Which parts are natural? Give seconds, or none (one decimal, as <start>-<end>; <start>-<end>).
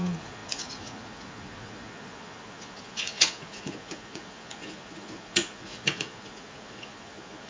none